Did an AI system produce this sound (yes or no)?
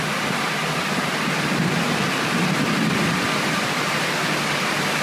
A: no